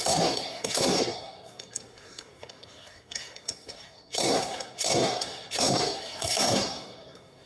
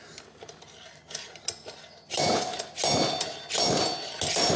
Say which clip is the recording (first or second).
second